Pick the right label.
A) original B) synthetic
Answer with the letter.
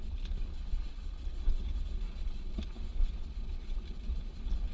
A